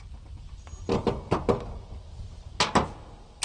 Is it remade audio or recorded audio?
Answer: recorded